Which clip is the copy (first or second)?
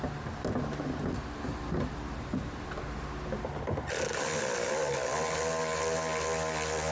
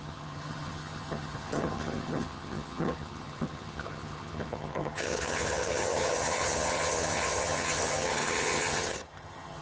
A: second